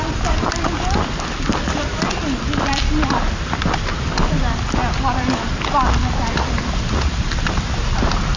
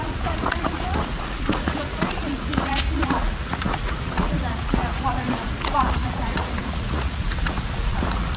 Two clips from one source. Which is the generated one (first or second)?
second